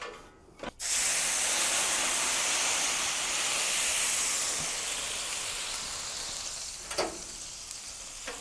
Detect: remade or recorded recorded